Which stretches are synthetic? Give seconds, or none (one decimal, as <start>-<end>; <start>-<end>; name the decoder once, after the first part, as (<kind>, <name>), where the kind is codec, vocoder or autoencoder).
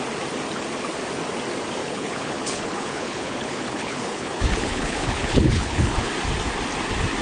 1.8-6.1 (codec, HILCodec)